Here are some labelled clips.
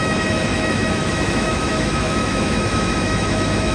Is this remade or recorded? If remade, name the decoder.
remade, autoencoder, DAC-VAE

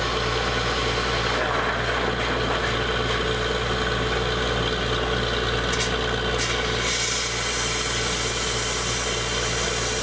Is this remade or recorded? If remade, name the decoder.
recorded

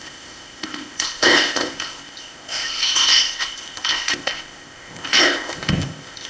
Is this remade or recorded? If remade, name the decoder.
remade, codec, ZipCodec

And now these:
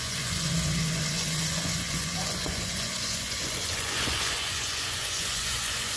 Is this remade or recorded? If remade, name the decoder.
remade, vocoder, Vocos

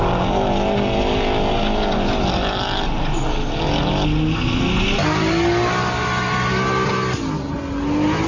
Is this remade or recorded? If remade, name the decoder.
recorded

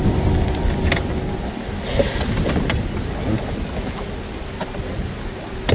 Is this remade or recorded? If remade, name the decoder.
recorded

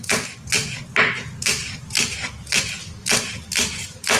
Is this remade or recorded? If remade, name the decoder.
recorded